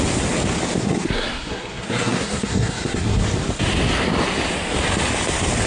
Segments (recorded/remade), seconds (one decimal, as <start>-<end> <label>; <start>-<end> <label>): 0.0-0.8 recorded; 0.8-3.2 remade; 3.2-5.7 recorded